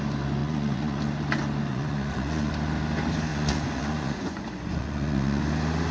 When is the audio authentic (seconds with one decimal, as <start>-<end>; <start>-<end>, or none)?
0.0-0.4; 1.0-1.7; 2.5-3.3; 5.4-5.9